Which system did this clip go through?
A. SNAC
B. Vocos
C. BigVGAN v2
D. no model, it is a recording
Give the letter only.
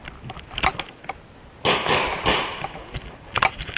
D